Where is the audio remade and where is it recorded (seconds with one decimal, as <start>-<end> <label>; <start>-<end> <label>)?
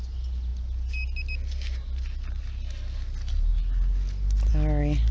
0.0-5.1 recorded